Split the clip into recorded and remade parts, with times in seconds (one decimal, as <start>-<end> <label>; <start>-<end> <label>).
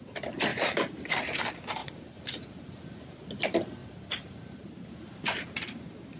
0.0-0.5 recorded; 0.5-1.4 remade; 1.4-1.8 recorded; 1.8-3.3 remade; 3.3-3.8 recorded; 3.8-5.8 remade; 5.8-6.2 recorded